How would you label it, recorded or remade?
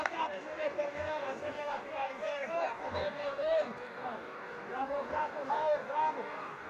remade